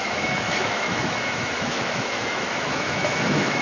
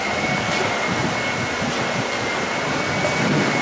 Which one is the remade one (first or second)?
first